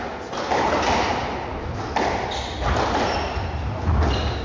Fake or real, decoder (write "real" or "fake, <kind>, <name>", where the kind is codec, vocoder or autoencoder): real